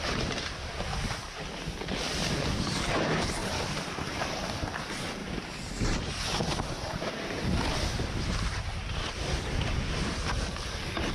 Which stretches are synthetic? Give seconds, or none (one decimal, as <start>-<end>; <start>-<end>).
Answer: 3.4-4.2; 5.2-7.6